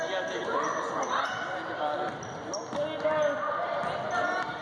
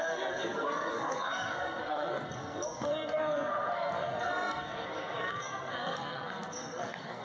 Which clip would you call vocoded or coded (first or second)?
second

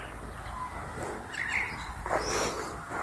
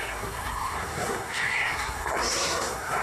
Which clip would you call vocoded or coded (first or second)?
second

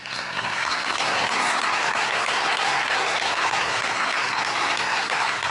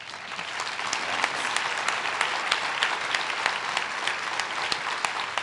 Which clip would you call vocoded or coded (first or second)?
first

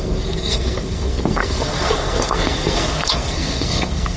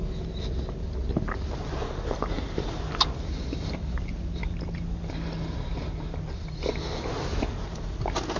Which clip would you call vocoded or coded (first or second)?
first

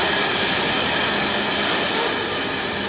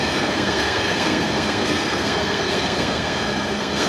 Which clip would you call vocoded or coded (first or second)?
second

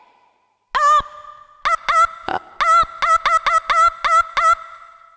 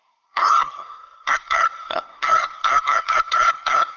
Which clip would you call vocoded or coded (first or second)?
second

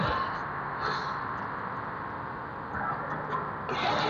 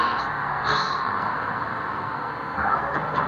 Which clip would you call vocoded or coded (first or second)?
second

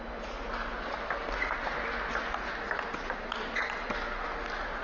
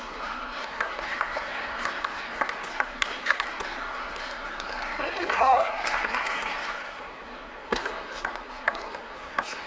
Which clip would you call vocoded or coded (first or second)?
second